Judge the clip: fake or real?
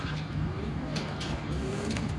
fake